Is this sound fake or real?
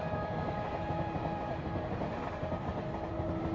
fake